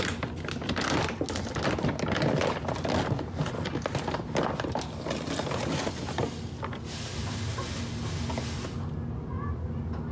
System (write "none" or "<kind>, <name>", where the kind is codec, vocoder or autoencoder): none